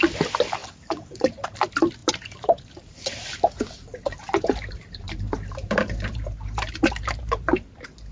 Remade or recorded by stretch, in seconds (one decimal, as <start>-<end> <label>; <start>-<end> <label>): 0.0-0.6 recorded; 0.6-1.4 remade; 1.4-2.0 recorded; 2.0-6.9 remade; 6.9-8.1 recorded